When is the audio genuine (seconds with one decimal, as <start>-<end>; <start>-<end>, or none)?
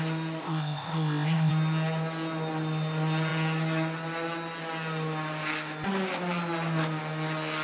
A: 0.0-0.4; 1.5-7.6